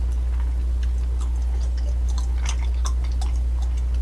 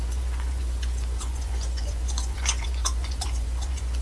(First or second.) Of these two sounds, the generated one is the second